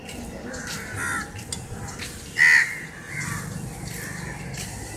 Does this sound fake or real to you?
real